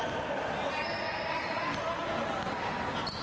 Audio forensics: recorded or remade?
recorded